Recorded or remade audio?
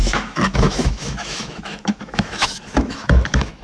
remade